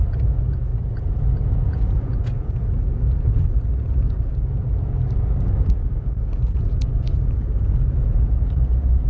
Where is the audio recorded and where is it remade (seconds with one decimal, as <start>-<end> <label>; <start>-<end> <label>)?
0.0-0.7 remade; 0.7-1.5 recorded; 1.5-4.3 remade; 4.3-6.6 recorded; 6.6-9.1 remade